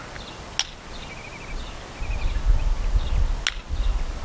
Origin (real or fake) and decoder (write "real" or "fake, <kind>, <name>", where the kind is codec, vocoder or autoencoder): real